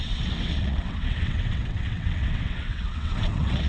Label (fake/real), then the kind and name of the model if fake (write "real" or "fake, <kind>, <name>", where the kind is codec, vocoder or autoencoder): fake, vocoder, WaveNeXt